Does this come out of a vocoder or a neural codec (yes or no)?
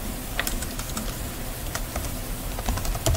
no